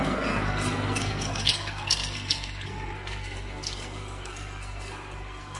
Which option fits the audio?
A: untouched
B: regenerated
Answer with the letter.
B